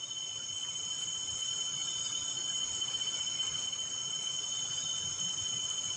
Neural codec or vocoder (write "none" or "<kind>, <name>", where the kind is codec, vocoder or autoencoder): none